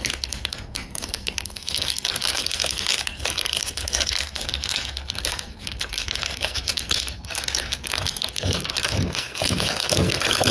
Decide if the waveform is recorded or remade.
remade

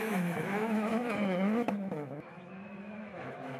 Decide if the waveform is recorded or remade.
remade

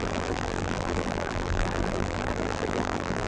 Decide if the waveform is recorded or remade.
remade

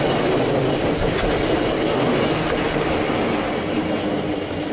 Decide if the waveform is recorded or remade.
recorded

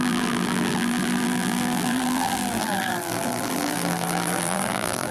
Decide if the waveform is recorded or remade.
remade